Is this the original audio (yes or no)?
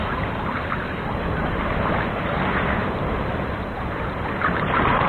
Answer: no